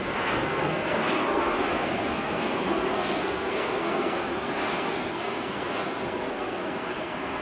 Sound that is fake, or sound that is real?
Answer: fake